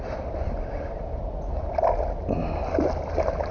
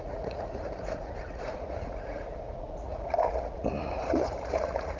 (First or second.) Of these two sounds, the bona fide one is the first